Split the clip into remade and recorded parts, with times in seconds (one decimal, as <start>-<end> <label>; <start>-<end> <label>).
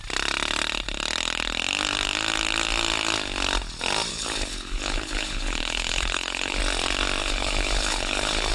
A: 0.0-4.1 recorded; 4.1-6.6 remade; 6.6-7.2 recorded; 7.2-8.5 remade